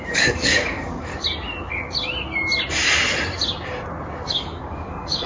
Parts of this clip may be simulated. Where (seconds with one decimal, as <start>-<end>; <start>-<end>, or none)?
0.0-1.1; 4.3-5.3